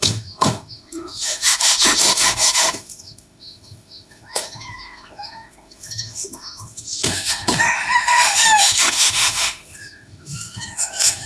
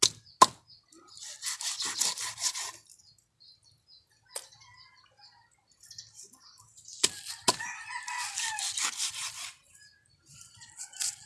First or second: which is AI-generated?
first